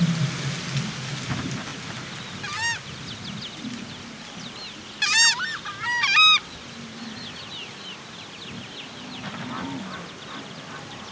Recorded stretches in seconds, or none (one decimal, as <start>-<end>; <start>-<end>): 0.0-11.1